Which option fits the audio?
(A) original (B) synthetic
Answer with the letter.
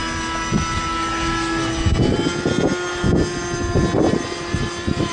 A